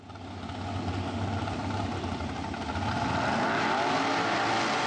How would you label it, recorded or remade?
recorded